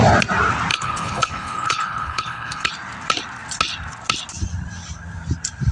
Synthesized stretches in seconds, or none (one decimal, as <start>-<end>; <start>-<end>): 0.7-2.7